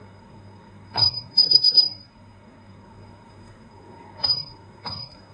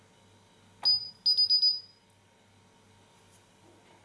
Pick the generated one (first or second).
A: first